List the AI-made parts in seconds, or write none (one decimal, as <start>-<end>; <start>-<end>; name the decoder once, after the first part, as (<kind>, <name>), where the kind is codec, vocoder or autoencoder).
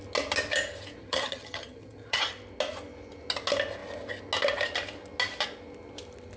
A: 1.0-2.2 (vocoder, HiFi-GAN)